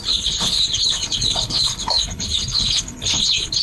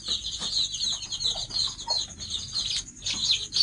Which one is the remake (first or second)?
first